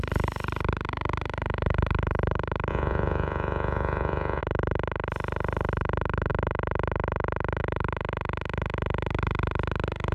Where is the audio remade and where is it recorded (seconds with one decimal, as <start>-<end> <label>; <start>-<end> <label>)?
0.0-2.7 recorded; 2.7-4.4 remade; 4.4-10.1 recorded